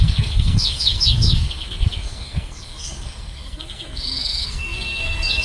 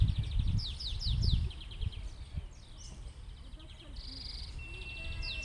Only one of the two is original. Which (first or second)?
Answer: second